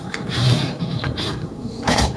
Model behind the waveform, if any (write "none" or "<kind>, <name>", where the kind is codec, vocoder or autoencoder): codec, SNAC